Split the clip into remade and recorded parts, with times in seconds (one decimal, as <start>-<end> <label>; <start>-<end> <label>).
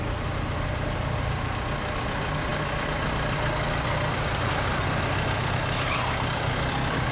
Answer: 0.0-7.1 recorded